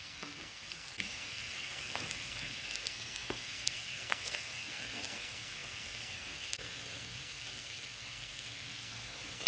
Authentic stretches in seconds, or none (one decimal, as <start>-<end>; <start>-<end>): none